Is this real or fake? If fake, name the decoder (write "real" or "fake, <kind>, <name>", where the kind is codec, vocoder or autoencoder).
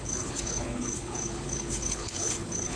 fake, codec, HILCodec